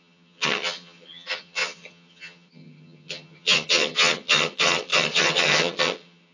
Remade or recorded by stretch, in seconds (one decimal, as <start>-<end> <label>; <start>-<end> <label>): 0.0-6.3 remade